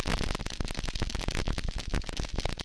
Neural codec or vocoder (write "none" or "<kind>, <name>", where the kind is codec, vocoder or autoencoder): none